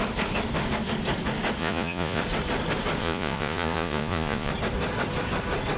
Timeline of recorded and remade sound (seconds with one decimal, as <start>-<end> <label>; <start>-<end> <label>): 0.0-1.6 recorded; 1.6-2.2 remade; 2.2-3.0 recorded; 3.0-4.5 remade; 4.5-5.8 recorded